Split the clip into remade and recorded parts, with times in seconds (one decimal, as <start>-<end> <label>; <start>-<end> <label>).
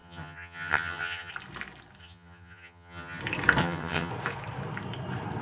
0.0-1.3 remade; 1.3-2.0 recorded; 2.0-3.2 remade; 3.2-3.6 recorded; 3.6-4.1 remade; 4.1-5.4 recorded